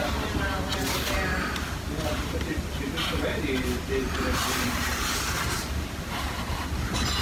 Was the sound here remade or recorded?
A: recorded